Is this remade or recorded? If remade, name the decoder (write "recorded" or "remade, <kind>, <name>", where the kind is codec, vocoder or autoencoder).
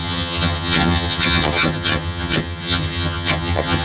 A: remade, vocoder, HiFi-GAN